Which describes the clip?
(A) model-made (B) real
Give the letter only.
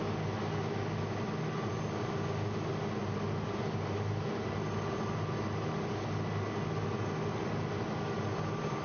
B